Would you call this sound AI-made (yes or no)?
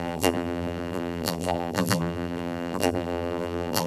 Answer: yes